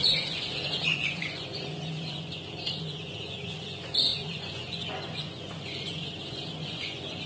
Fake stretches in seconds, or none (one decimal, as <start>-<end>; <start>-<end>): 0.0-7.3